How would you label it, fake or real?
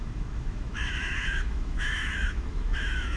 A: fake